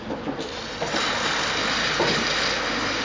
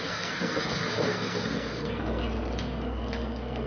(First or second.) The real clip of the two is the first